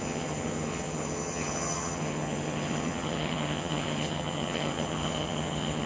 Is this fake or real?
fake